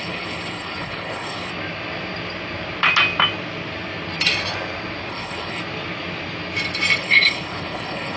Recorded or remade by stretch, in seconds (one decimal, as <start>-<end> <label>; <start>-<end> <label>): 0.0-1.5 remade; 1.5-5.1 recorded; 5.1-5.6 remade; 5.6-7.0 recorded; 7.0-8.2 remade